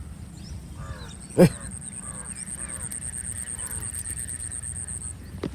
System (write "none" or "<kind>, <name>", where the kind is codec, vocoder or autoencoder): none